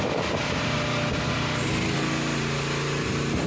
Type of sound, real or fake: real